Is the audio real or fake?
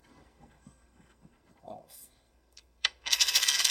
fake